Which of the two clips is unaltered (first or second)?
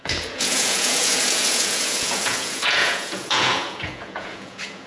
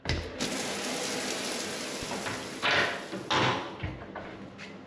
second